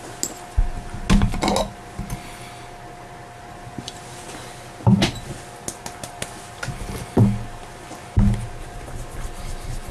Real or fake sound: real